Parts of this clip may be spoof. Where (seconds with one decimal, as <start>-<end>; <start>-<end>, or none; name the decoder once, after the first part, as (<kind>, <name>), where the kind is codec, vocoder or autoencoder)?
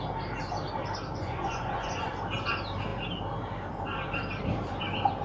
1.2-2.1 (vocoder, Vocos)